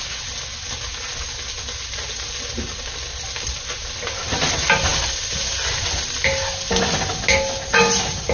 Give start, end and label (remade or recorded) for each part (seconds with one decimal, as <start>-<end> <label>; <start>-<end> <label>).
0.0-8.3 recorded